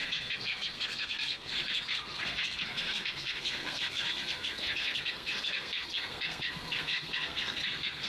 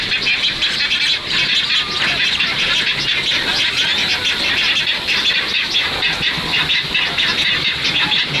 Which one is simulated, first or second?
first